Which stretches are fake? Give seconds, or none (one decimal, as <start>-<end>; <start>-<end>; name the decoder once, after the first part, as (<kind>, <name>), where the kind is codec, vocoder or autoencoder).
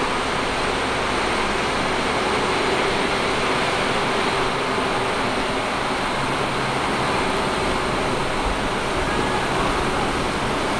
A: none